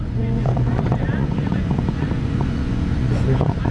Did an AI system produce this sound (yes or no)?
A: yes